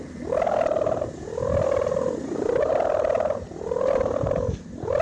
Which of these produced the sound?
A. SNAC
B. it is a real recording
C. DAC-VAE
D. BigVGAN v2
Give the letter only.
B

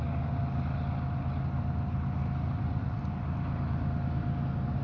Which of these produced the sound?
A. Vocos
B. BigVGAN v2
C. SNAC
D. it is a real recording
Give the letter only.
D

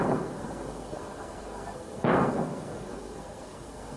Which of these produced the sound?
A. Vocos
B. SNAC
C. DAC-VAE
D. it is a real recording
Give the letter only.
B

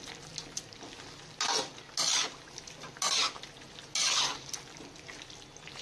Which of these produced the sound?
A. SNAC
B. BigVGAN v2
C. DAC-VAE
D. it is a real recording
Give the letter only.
D